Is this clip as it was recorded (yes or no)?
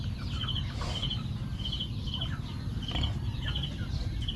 yes